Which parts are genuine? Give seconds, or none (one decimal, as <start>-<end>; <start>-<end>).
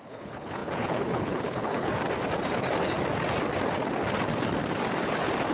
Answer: 2.0-5.5